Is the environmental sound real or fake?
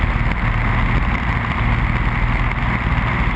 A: real